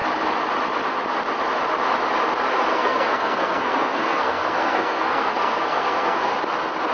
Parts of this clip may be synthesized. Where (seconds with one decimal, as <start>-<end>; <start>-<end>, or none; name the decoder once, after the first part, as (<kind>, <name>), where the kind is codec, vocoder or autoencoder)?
2.7-6.3 (codec, SNAC)